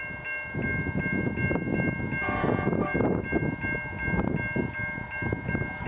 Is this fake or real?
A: real